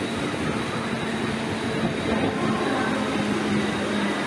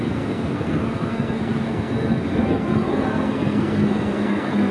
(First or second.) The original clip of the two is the first